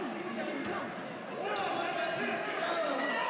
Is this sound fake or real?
real